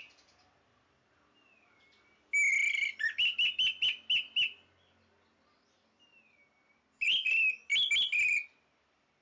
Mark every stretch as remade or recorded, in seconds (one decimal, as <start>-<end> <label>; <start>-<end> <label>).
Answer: 0.0-9.2 recorded